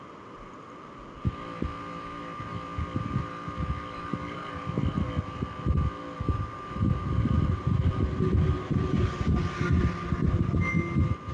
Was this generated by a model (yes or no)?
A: no